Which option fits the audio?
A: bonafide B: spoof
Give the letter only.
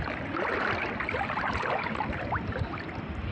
A